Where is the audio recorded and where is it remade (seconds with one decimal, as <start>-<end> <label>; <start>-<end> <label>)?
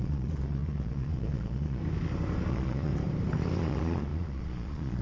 0.0-1.8 remade; 1.8-2.5 recorded; 2.5-2.9 remade; 2.9-3.6 recorded; 3.6-5.0 remade